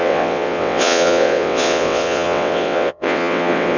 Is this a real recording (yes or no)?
no